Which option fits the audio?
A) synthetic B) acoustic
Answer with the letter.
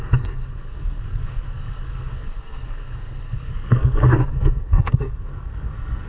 A